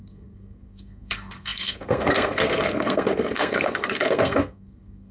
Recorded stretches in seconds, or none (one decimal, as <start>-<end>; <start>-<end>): none

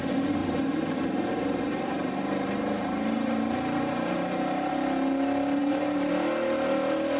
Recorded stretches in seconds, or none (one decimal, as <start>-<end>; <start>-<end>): 0.0-0.4; 4.7-5.6; 6.1-7.2

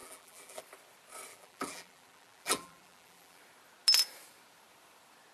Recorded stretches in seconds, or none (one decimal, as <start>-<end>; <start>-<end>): 0.6-1.3; 3.4-5.3

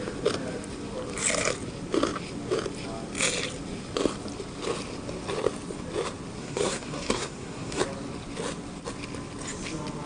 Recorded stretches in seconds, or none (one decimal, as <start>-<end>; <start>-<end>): 0.0-6.4; 7.8-10.1